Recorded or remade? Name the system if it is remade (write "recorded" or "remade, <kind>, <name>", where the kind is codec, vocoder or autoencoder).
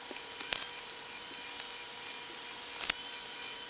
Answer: recorded